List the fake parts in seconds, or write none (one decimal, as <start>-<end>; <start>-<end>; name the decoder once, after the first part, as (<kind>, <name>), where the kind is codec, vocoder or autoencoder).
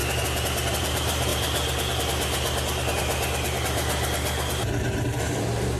0.8-1.3 (vocoder, BigVGAN v2); 4.8-5.8